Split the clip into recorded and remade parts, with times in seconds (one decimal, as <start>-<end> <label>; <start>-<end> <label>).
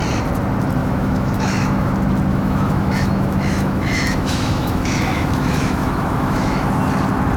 0.0-0.8 recorded; 0.8-1.9 remade; 1.9-2.3 recorded; 2.3-6.7 remade; 6.7-7.4 recorded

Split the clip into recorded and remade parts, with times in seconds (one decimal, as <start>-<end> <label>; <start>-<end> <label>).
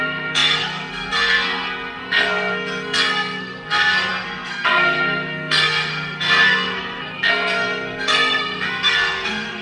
0.0-9.6 remade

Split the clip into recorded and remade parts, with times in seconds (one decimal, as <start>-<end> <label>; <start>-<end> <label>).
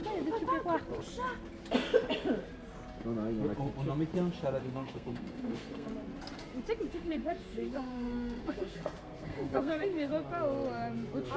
0.0-4.6 recorded; 4.6-5.9 remade; 5.9-6.9 recorded; 6.9-10.1 remade; 10.1-11.4 recorded